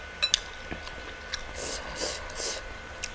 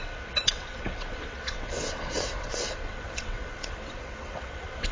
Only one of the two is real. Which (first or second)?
first